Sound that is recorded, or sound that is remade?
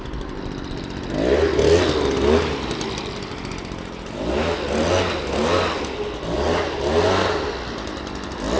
recorded